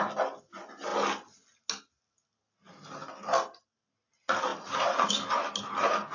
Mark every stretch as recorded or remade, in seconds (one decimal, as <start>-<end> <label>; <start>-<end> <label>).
0.0-6.1 recorded